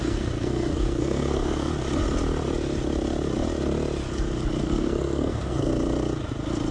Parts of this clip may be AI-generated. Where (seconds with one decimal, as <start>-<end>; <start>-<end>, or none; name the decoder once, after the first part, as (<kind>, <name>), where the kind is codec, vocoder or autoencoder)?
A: 0.0-1.7 (codec, SNAC); 4.6-5.7